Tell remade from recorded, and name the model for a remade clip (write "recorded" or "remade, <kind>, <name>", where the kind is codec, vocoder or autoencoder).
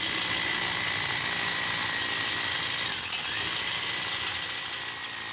recorded